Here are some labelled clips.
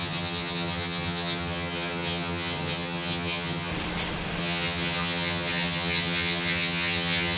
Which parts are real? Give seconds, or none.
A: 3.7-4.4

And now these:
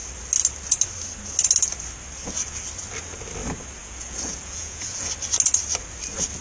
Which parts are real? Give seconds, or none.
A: 0.0-3.8; 5.1-6.4

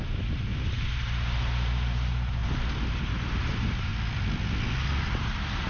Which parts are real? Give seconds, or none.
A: 2.4-3.0; 3.9-5.2

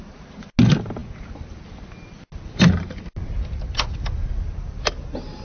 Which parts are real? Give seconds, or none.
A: 0.0-5.4

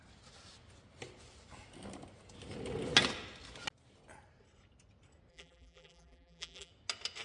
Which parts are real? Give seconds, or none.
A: 0.0-5.3; 6.7-7.2